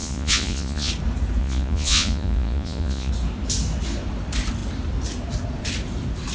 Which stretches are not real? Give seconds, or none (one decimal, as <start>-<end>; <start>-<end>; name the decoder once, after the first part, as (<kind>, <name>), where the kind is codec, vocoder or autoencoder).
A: 0.0-0.9 (vocoder, Vocos); 1.4-3.1